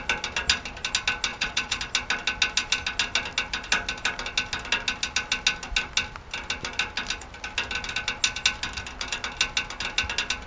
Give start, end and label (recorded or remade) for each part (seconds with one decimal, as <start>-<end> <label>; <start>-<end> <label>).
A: 0.0-1.3 recorded; 1.3-1.8 remade; 1.8-10.5 recorded

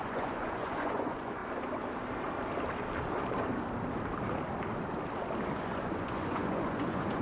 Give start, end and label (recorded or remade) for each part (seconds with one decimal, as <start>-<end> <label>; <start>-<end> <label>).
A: 0.0-1.4 remade; 1.4-5.6 recorded; 5.6-7.2 remade

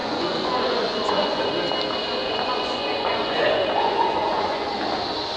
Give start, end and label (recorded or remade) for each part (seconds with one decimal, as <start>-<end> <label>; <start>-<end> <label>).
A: 0.0-1.5 remade; 1.5-2.2 recorded; 2.2-4.7 remade; 4.7-5.4 recorded

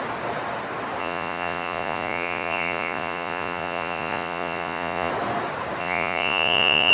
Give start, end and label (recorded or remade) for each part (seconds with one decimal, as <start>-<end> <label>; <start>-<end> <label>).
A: 0.0-1.0 recorded; 1.0-5.1 remade; 5.1-5.8 recorded; 5.8-6.9 remade

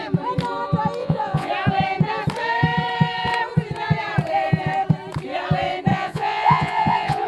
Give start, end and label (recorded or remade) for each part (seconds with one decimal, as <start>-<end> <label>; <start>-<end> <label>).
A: 0.0-1.0 recorded; 1.0-1.5 remade; 1.5-5.9 recorded; 5.9-7.3 remade